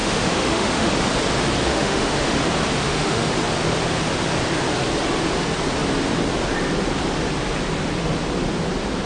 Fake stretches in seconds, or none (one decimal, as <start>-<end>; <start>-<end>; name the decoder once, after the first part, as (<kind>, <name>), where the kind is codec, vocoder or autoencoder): 0.0-0.9 (autoencoder, DAC-VAE); 1.6-2.4; 2.8-3.3